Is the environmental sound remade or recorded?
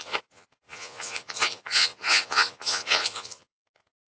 remade